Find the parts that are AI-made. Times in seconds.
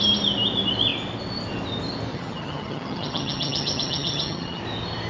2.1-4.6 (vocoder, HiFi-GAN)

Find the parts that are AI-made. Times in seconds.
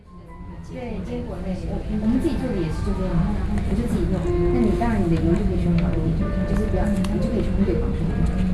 none